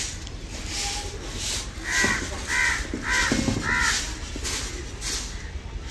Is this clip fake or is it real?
real